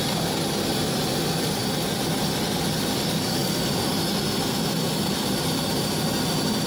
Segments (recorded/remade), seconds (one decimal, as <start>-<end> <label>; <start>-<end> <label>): 0.0-3.4 recorded; 3.4-5.6 remade; 5.6-6.7 recorded